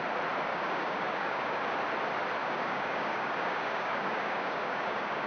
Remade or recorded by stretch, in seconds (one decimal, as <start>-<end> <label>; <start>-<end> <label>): 0.0-0.5 recorded; 0.5-1.6 remade; 1.6-2.4 recorded; 2.4-5.3 remade